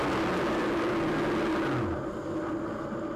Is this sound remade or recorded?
recorded